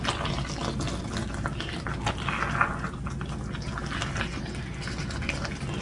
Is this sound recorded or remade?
recorded